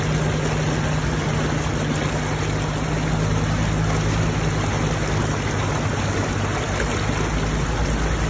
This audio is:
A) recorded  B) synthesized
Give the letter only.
A